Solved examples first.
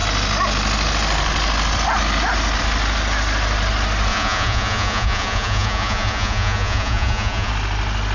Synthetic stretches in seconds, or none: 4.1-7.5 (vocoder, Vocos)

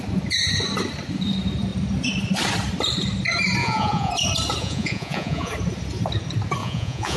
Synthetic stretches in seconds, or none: 3.6-4.1 (vocoder, Vocos); 4.6-5.5; 6.6-7.2

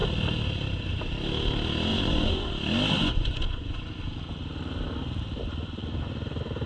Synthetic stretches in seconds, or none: 1.9-2.5 (vocoder, Vocos); 3.0-3.8

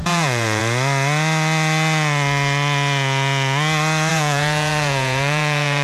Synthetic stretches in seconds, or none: 0.0-0.6 (vocoder, Vocos); 4.1-5.8

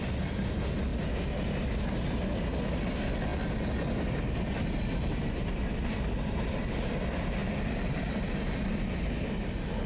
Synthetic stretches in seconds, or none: none